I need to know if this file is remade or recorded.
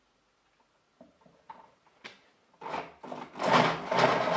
recorded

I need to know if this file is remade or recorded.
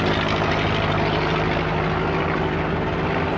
recorded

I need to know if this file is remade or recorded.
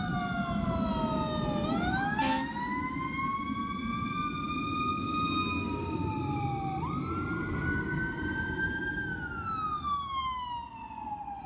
recorded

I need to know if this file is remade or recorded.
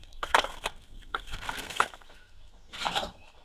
remade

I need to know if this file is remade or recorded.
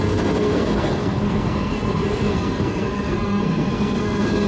remade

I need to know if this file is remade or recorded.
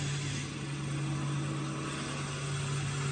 recorded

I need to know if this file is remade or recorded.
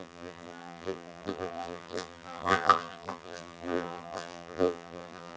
remade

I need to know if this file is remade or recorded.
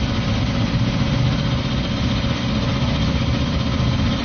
recorded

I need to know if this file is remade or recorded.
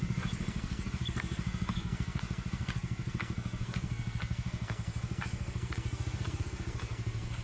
remade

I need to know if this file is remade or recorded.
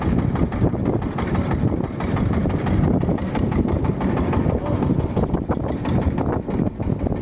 recorded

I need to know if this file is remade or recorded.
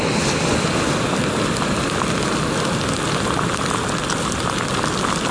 recorded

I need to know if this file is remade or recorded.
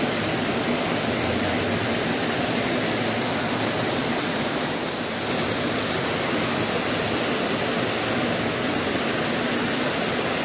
recorded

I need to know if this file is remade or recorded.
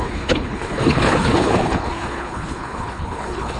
remade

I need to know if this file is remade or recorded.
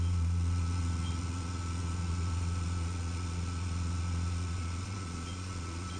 remade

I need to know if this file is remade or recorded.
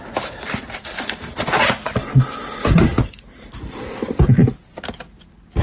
recorded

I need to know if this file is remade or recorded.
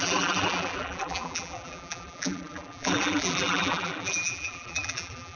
remade